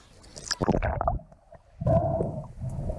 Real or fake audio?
real